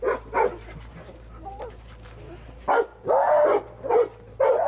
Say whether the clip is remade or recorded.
recorded